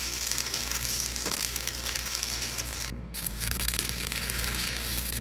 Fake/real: fake